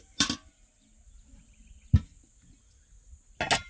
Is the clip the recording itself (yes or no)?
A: yes